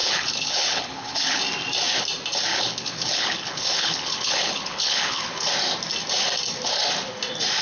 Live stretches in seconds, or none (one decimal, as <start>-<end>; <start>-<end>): 1.4-2.5; 5.5-7.6